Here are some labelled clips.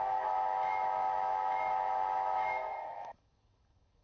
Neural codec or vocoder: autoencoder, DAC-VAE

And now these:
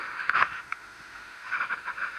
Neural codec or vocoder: autoencoder, DAC-VAE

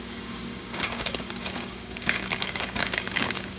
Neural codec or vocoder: codec, DAC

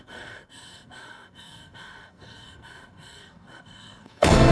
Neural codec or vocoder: codec, SNAC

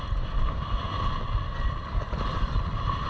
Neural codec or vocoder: none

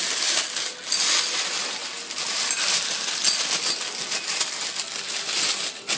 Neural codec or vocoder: none